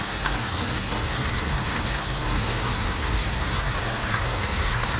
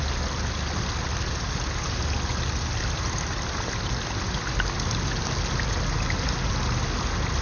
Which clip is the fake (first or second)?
first